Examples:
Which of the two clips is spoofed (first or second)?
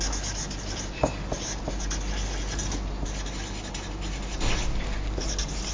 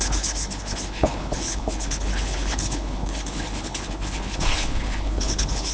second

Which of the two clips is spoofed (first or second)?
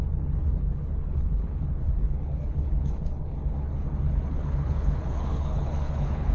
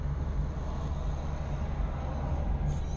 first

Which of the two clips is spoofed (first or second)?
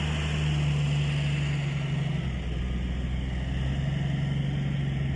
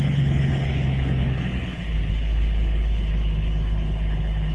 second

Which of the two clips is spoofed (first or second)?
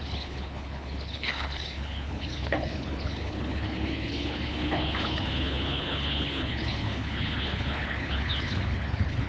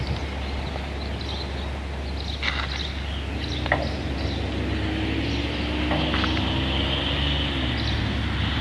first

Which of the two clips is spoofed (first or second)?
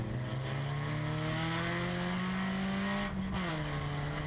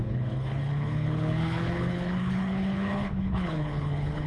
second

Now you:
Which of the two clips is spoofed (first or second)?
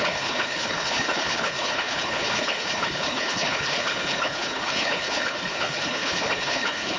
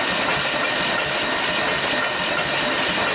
first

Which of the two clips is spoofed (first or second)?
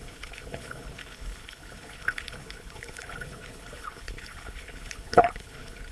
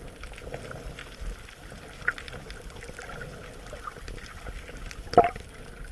first